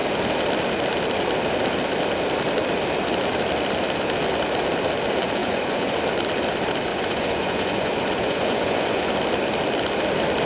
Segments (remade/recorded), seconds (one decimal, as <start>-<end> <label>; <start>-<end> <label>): 0.0-5.4 recorded; 5.4-6.0 remade; 6.0-6.9 recorded; 6.9-9.0 remade; 9.0-10.5 recorded